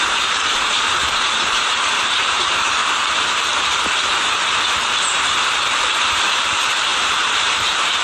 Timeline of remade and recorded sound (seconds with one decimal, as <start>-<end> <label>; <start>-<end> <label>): 0.0-2.8 remade; 2.8-5.1 recorded; 5.1-8.0 remade